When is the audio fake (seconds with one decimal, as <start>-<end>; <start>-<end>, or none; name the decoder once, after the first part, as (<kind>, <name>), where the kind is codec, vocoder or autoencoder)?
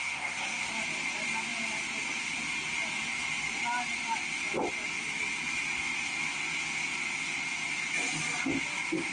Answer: 0.0-0.7 (codec, SNAC)